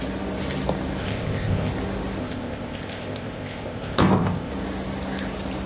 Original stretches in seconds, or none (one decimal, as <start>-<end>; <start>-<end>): 0.0-1.0; 1.7-2.2; 4.5-5.7